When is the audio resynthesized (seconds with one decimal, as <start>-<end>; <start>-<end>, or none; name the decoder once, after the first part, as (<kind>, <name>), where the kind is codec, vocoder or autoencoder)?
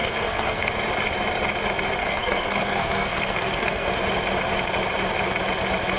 0.0-0.7 (codec, SNAC); 2.0-3.9